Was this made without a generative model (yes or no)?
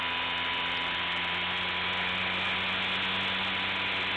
yes